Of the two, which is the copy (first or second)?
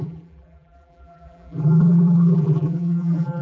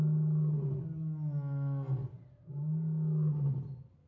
first